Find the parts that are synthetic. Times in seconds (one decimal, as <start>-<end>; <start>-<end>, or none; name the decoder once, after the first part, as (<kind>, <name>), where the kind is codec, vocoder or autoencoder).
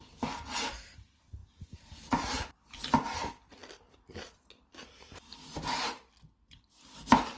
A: 1.4-2.5 (vocoder, BigVGAN v2)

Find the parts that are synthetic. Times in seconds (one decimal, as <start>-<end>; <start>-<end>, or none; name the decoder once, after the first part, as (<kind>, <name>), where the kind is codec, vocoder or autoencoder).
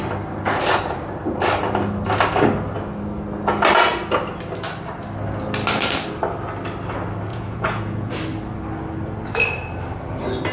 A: 7.3-8.1 (vocoder, Vocos)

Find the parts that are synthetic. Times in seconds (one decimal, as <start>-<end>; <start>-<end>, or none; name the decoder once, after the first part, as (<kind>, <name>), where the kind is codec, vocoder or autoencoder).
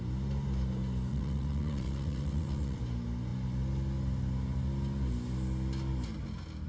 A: 1.1-2.8 (vocoder, WaveNeXt)